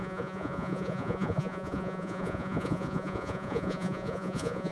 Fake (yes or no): yes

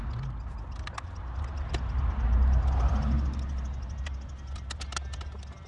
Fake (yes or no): no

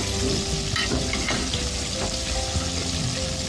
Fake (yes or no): no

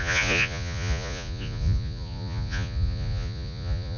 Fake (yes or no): yes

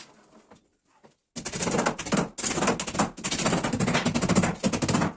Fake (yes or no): no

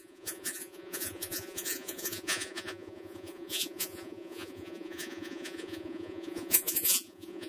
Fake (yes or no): yes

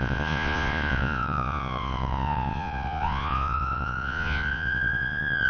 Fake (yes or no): yes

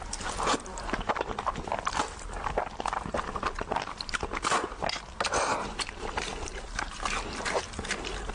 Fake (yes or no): no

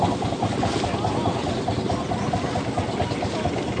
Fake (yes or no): no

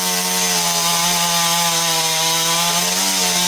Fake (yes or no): no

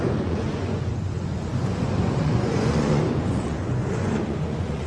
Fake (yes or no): yes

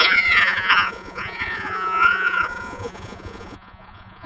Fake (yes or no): yes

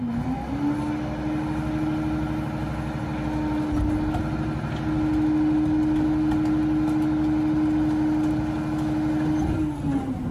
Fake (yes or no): no